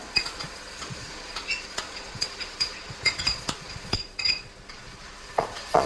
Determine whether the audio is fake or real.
fake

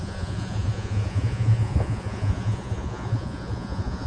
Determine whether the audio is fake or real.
fake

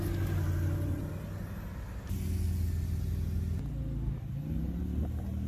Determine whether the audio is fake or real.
real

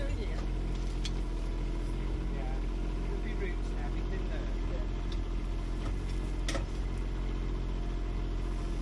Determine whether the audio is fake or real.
real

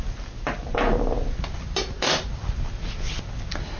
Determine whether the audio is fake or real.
real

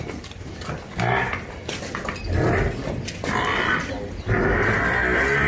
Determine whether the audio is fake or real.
real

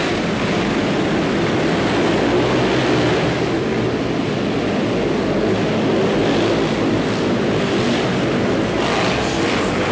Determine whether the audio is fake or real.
real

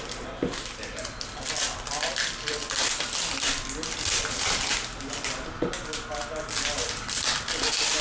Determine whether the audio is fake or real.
real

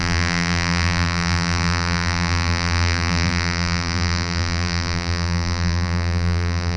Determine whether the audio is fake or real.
fake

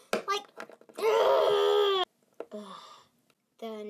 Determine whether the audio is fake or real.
real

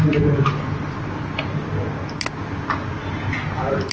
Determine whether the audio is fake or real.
real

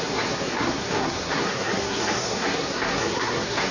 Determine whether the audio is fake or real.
fake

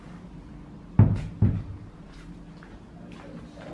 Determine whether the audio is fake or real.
real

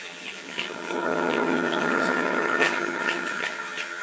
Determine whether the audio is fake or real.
fake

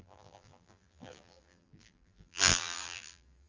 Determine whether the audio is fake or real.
fake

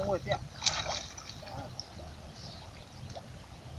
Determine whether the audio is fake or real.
real